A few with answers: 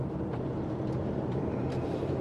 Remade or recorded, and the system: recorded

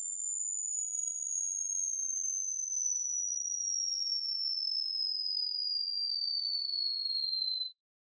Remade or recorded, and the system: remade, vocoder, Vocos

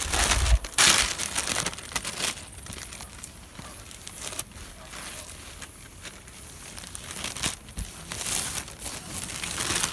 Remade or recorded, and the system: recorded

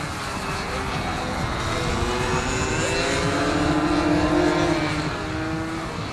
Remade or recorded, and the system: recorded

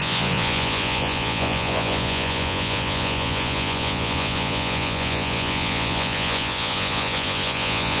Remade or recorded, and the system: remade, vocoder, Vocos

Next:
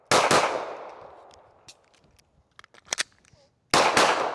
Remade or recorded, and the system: recorded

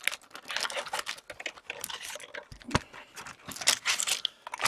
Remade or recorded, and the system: recorded